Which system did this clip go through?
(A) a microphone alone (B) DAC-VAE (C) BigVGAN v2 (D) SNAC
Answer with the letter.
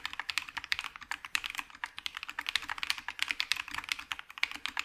A